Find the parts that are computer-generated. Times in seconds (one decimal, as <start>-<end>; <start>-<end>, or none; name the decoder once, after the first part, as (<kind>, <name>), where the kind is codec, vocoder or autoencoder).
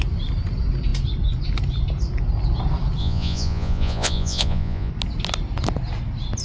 3.0-4.9 (vocoder, Vocos)